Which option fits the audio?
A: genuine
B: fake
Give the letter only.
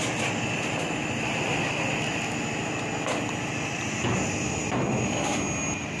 A